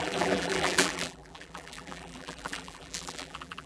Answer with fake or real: fake